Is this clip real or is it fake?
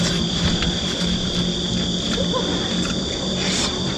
real